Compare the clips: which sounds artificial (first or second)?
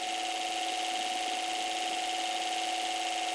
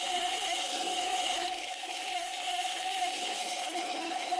second